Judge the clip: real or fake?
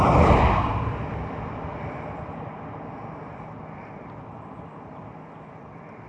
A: real